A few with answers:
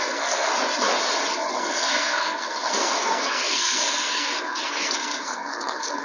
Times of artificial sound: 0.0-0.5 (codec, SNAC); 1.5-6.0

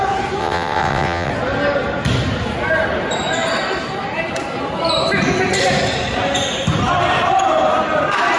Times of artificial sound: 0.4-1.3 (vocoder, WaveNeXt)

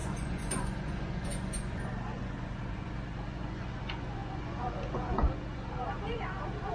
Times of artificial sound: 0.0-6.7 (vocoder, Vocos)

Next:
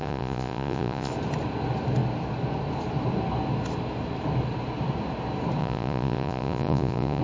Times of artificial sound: 0.0-1.1 (vocoder, Vocos); 5.6-7.2

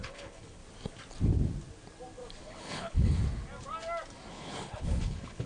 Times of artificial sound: 0.0-0.6 (codec, HILCodec); 2.4-3.2; 4.3-5.5

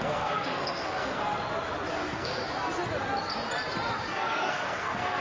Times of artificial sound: 0.0-1.2 (codec, SNAC); 1.9-2.4; 4.1-5.2

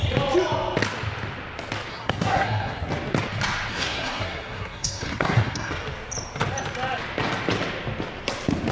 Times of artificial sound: 1.9-2.9 (codec, SNAC); 3.7-5.7

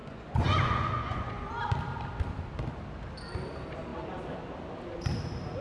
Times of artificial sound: 0.0-1.5 (vocoder, Vocos)